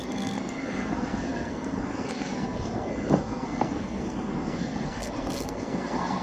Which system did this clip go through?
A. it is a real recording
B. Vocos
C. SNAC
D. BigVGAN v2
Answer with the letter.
C